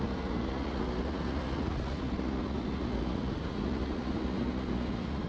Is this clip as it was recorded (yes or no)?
no